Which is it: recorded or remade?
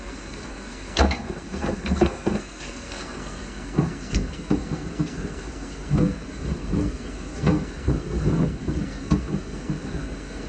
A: remade